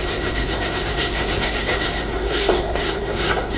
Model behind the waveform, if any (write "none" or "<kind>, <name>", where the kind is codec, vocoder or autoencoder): codec, SNAC